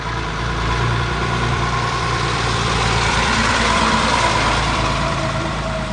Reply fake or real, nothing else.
fake